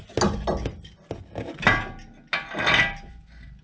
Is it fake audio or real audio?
real